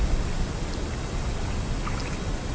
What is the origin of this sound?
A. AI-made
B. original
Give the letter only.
B